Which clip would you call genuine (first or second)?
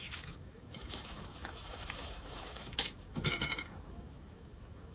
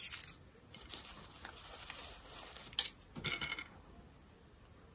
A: second